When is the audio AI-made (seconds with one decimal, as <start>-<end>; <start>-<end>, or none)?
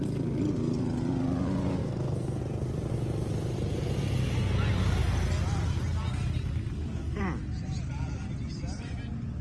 1.8-2.4